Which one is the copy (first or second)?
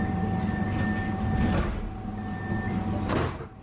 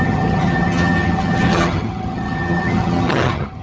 second